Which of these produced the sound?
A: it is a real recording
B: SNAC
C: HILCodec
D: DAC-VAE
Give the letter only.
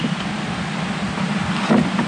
A